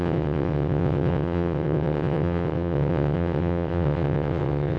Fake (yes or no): yes